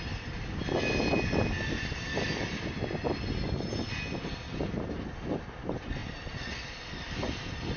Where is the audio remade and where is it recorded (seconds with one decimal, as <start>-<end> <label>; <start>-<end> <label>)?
0.0-7.8 recorded